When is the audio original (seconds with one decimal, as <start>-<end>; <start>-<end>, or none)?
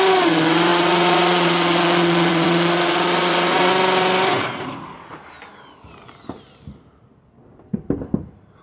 0.0-0.7; 3.7-4.3; 5.1-8.6